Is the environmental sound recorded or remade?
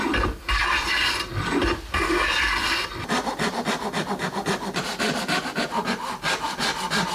remade